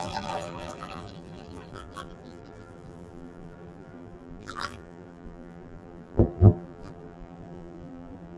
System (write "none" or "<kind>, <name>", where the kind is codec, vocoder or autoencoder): vocoder, BigVGAN v2